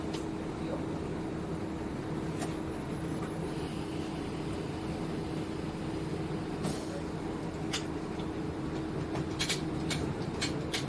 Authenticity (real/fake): real